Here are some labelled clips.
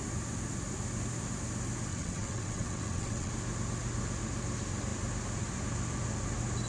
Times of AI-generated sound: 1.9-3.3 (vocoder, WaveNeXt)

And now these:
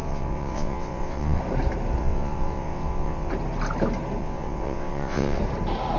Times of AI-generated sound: 0.0-1.4 (vocoder, WaveNeXt); 2.0-3.3; 4.2-5.4

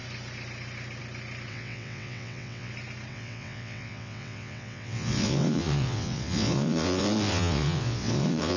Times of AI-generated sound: 1.5-2.7 (vocoder, WaveNeXt); 3.1-8.6

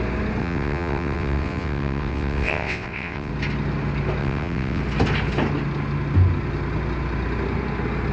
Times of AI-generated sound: 0.4-3.3 (vocoder, WaveNeXt); 4.2-4.8

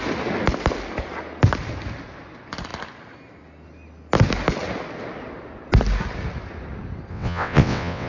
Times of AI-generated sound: 7.1-8.1 (vocoder, WaveNeXt)